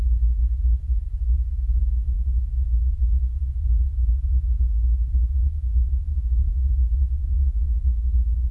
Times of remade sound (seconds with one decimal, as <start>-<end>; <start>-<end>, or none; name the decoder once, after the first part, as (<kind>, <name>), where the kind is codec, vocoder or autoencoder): 1.8-2.4 (codec, SNAC); 6.1-6.7; 7.2-8.5